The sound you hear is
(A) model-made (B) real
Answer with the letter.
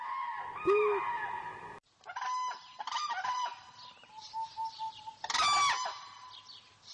B